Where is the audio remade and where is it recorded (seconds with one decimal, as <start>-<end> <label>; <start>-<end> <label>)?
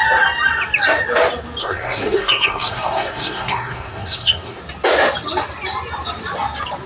0.0-1.6 recorded; 1.6-4.6 remade; 4.6-6.9 recorded